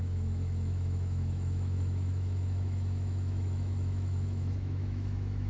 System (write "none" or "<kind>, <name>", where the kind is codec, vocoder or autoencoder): autoencoder, DAC-VAE